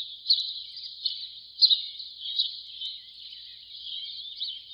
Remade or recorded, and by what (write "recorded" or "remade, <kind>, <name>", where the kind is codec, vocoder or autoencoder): recorded